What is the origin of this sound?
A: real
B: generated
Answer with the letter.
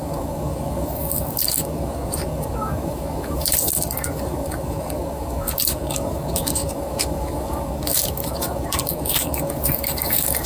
B